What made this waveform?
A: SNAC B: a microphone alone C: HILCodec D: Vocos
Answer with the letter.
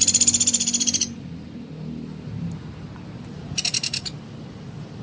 B